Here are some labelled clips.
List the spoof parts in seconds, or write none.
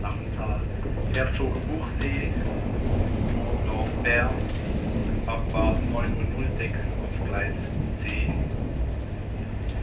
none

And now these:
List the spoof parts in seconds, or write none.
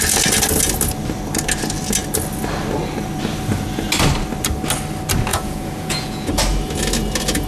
5.3-6.3 (vocoder, Vocos)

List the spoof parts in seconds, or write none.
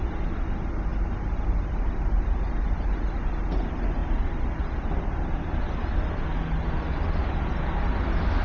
none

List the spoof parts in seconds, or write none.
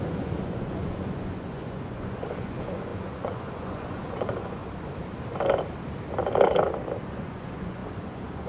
0.0-4.6 (vocoder, Vocos); 7.1-8.5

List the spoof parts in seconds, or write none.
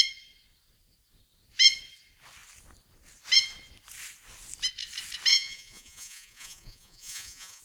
5.3-7.6 (vocoder, Vocos)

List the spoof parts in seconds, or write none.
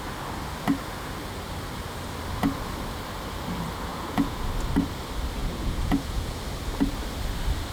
3.9-4.4 (vocoder, Vocos); 5.4-6.4